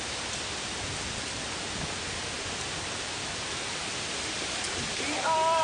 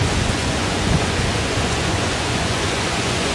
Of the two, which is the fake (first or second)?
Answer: second